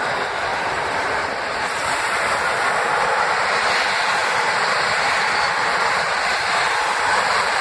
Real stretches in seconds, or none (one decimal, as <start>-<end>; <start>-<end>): 0.0-0.5; 1.6-4.2